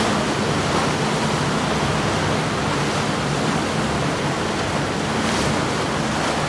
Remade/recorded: recorded